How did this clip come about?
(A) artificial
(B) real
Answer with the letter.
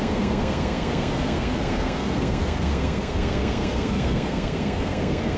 A